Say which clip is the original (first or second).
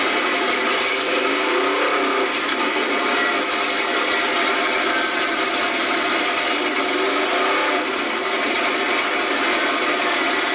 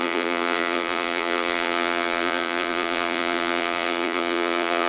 first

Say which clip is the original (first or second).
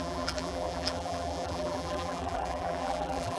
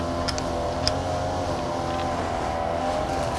second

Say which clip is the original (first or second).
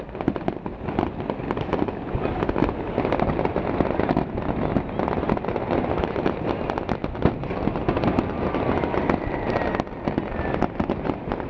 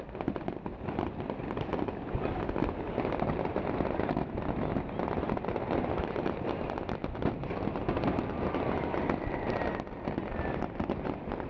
first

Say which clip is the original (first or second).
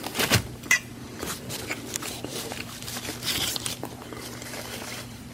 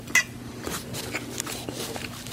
second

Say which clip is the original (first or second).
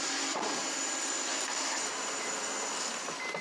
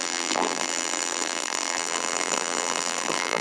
first